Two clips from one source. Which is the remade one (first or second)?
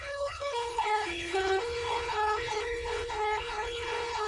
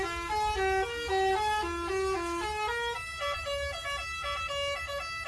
first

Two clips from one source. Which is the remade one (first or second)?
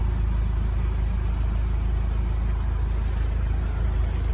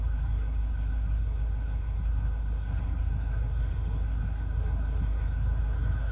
second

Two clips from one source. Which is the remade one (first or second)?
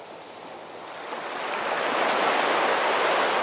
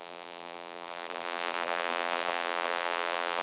second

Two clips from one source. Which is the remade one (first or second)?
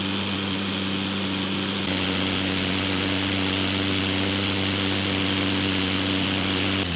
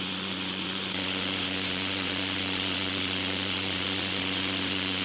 second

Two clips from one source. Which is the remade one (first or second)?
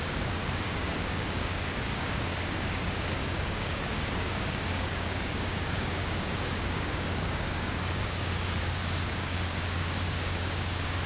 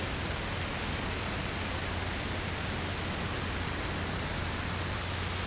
first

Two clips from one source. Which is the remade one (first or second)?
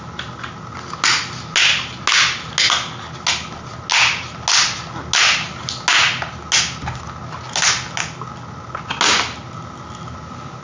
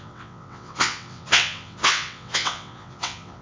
second